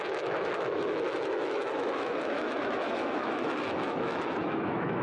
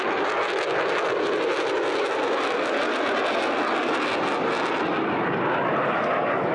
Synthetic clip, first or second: first